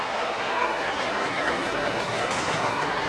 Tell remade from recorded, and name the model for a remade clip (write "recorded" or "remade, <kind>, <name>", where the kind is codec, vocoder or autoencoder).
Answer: remade, codec, SNAC